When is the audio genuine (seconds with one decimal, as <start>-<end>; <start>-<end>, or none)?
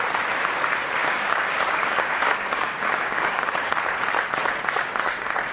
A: 0.0-1.0; 3.7-5.5